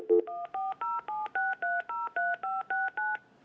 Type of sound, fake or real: real